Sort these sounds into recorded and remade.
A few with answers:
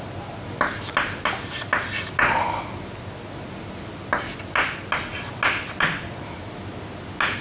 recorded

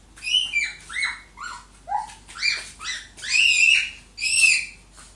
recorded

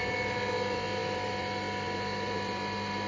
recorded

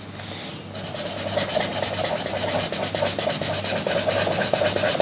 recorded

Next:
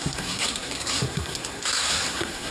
remade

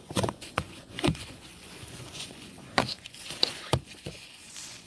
remade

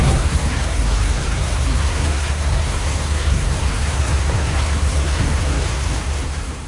remade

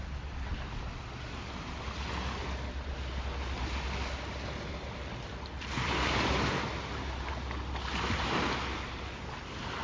recorded